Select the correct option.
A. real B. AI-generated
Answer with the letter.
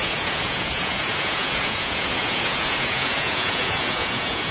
B